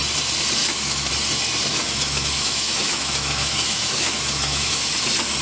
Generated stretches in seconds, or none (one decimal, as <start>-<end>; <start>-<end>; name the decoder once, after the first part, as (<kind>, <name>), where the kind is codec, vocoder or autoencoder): 0.6-1.1 (autoencoder, DAC-VAE); 1.7-4.9